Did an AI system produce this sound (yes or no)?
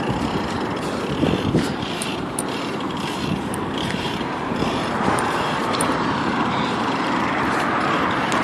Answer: yes